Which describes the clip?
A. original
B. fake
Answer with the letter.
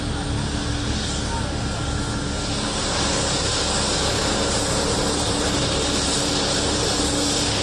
A